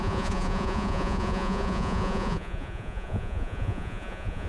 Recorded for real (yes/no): no